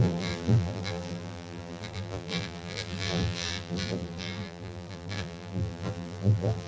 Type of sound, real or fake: fake